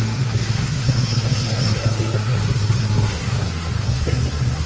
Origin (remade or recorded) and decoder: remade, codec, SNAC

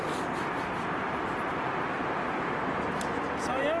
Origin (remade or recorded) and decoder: recorded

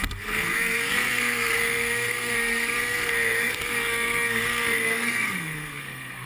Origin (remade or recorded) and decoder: remade, codec, SNAC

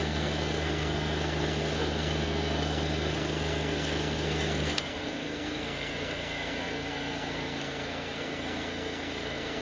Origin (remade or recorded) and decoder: remade, codec, SNAC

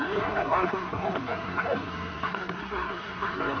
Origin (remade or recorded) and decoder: remade, codec, SNAC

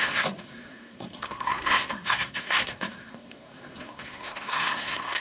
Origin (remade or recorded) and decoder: remade, codec, SNAC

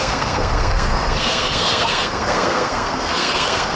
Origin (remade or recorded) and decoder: remade, codec, SNAC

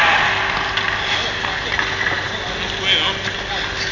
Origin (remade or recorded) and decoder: recorded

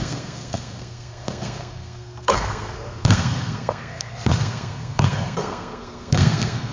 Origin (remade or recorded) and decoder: remade, codec, SNAC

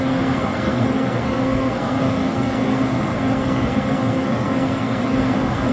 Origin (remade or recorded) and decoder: remade, codec, SNAC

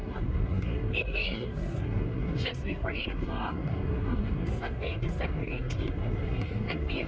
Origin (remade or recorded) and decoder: remade, codec, SNAC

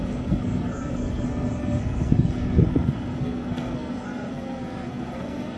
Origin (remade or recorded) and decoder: remade, codec, SNAC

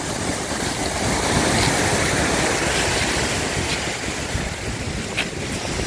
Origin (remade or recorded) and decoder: recorded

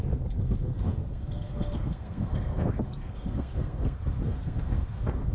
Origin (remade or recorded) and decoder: remade, codec, SNAC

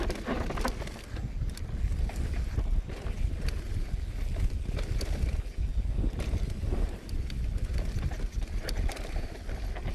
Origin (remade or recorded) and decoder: recorded